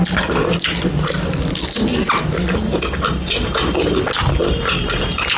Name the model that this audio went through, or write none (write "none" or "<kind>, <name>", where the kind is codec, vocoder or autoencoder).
none